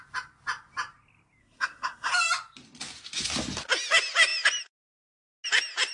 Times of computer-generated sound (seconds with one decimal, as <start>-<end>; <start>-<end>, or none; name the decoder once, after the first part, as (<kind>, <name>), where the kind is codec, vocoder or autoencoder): 1.4-2.1 (codec, SNAC)